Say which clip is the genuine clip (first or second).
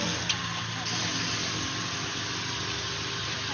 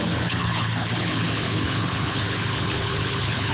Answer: first